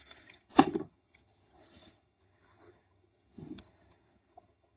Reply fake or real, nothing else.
fake